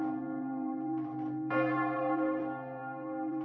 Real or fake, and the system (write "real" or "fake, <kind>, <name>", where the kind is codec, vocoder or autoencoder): fake, vocoder, BigVGAN v2